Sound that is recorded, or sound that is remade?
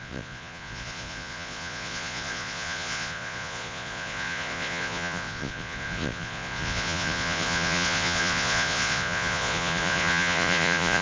remade